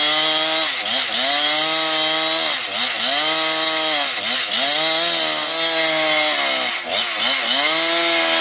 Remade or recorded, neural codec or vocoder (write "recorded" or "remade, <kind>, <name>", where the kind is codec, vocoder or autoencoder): recorded